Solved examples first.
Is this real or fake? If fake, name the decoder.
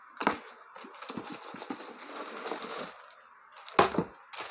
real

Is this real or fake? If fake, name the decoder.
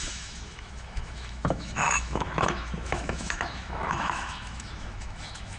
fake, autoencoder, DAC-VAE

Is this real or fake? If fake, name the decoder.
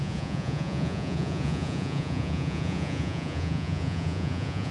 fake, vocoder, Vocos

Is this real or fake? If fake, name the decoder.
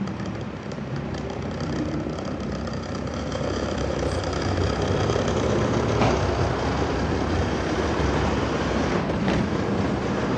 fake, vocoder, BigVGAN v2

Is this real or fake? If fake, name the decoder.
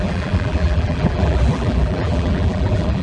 fake, vocoder, BigVGAN v2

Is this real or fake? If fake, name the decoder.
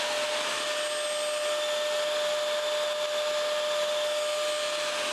real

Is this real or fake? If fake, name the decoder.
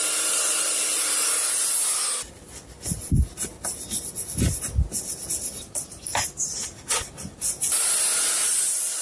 real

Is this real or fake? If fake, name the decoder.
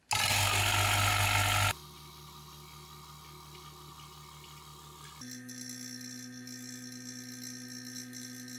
real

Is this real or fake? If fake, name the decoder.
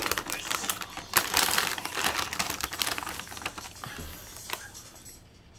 real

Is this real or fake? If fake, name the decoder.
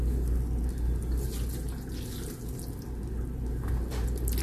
real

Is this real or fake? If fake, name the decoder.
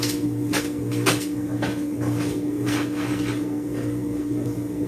fake, codec, SNAC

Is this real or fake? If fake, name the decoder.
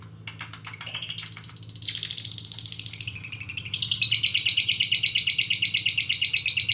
real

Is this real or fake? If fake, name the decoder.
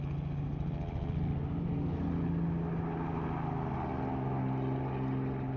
real